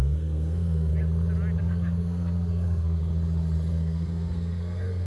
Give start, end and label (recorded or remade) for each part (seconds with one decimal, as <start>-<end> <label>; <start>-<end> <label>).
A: 0.0-0.9 remade; 0.9-1.6 recorded; 1.6-3.0 remade; 3.0-3.7 recorded; 3.7-5.1 remade